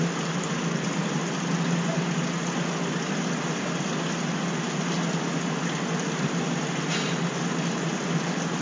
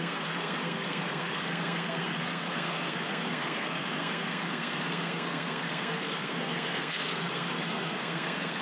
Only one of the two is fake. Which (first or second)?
second